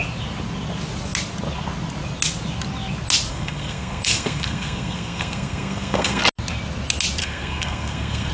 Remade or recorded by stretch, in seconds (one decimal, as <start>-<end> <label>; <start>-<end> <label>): 0.0-3.3 recorded; 3.3-6.2 remade; 6.2-7.2 recorded; 7.2-8.3 remade